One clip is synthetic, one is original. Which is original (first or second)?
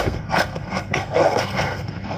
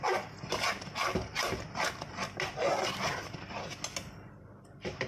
second